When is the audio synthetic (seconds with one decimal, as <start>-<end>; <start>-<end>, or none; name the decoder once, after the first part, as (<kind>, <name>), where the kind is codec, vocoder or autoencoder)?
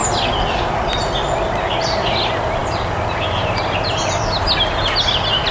none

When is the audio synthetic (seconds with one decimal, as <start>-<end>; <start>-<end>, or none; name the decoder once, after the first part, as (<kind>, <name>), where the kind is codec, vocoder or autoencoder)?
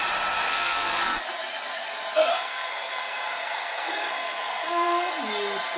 0.5-1.2 (codec, SNAC); 2.3-5.1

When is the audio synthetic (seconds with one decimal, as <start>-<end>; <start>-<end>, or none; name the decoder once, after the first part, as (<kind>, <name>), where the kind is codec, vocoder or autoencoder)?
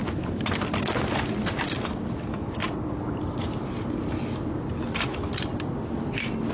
none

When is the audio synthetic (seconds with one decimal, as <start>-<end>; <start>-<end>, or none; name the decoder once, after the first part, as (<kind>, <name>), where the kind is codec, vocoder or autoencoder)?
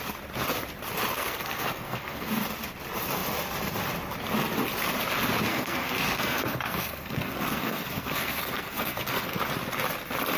1.1-2.3 (codec, SNAC); 5.5-9.4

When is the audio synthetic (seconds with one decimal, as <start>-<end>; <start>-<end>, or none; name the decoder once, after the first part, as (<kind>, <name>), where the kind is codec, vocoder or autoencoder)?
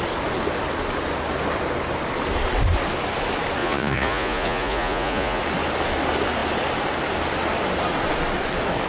3.6-5.4 (vocoder, Vocos)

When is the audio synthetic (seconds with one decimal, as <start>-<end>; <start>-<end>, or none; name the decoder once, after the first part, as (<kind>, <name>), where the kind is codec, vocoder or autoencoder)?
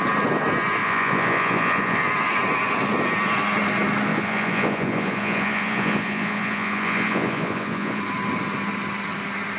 0.8-2.0 (vocoder, Vocos); 4.1-8.0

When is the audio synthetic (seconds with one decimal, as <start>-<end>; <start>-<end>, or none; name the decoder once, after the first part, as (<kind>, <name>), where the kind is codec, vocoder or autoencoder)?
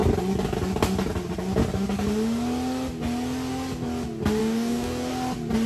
4.4-5.1 (codec, DAC)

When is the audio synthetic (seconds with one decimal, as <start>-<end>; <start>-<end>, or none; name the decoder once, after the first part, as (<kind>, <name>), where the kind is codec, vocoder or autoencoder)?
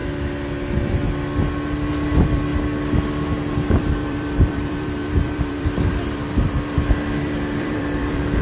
1.9-2.5 (vocoder, BigVGAN v2); 3.7-8.4